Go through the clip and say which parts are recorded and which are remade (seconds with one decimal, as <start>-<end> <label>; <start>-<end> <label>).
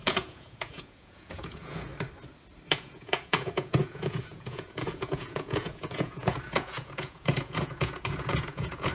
0.0-1.9 remade; 1.9-2.7 recorded; 2.7-8.9 remade